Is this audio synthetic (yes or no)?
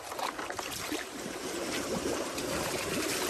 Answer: yes